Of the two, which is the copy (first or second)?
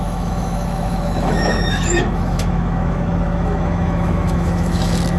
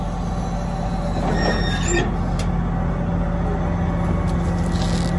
first